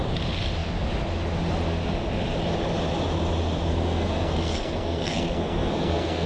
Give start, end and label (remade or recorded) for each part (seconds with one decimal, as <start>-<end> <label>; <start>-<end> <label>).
0.0-3.7 recorded; 3.7-6.3 remade